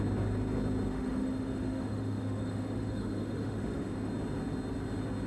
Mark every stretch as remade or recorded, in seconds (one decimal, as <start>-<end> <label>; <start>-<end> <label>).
0.0-0.9 recorded; 0.9-4.1 remade; 4.1-5.3 recorded